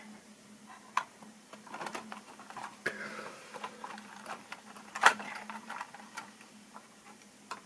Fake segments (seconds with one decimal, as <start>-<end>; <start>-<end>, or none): 1.9-6.5